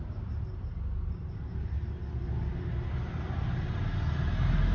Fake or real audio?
real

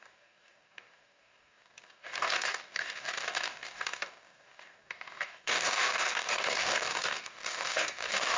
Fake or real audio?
fake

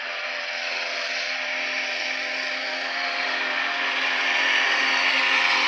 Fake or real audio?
real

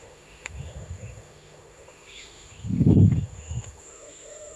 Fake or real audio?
fake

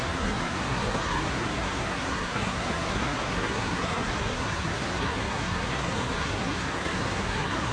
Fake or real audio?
fake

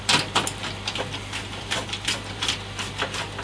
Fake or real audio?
fake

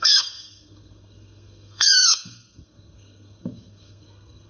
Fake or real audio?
fake